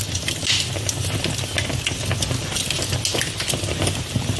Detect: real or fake real